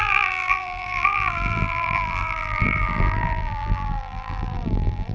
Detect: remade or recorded remade